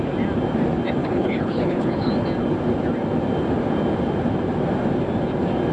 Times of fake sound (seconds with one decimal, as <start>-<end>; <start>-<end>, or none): 1.0-2.1

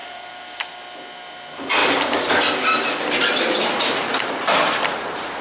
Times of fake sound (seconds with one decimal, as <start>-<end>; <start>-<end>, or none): 0.0-0.7

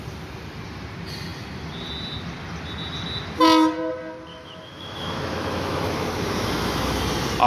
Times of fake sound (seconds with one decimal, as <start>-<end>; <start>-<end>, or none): 4.3-7.0

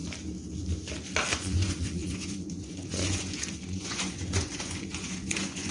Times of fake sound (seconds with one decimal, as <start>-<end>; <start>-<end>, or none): 1.3-5.7

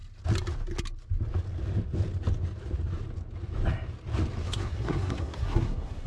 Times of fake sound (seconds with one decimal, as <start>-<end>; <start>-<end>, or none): 4.4-6.1

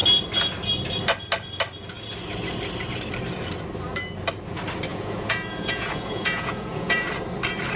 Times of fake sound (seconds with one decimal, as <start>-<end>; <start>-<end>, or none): 4.9-7.1

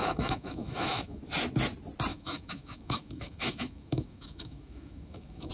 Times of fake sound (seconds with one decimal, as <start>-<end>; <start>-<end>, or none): 0.0-1.2; 2.1-5.5